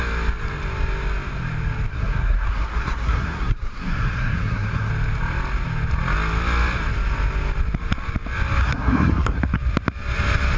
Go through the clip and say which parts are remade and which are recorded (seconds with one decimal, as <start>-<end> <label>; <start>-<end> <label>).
0.0-1.9 recorded; 1.9-4.9 remade; 4.9-8.6 recorded; 8.6-9.4 remade; 9.4-10.6 recorded